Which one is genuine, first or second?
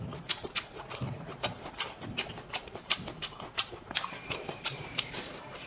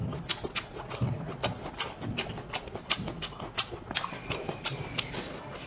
second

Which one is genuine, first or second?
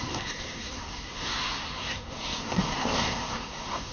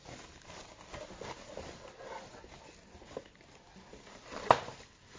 second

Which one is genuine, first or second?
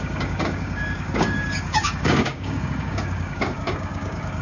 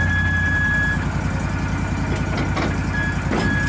second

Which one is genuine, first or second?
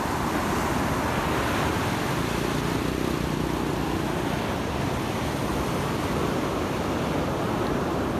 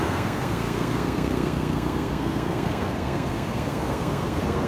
first